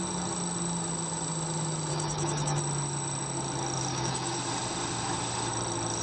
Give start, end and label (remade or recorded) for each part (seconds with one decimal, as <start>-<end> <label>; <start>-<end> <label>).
0.0-1.9 recorded; 1.9-2.6 remade; 2.6-3.9 recorded; 3.9-4.4 remade; 4.4-6.0 recorded